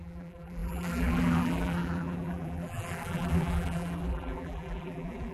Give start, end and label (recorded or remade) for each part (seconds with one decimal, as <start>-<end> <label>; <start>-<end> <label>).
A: 0.0-5.3 remade